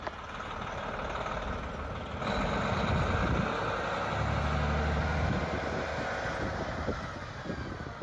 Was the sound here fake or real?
real